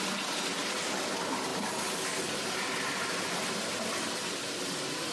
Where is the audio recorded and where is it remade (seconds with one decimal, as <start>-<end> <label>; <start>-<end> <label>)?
0.0-5.1 recorded